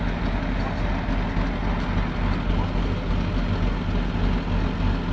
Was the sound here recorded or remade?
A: recorded